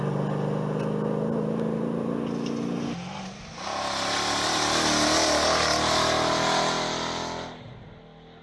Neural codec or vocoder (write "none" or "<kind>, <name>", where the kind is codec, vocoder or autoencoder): none